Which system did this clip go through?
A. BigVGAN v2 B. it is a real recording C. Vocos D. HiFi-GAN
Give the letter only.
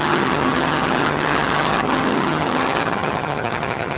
D